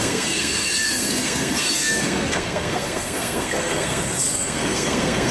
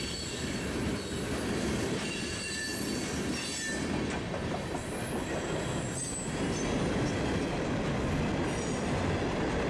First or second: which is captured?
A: second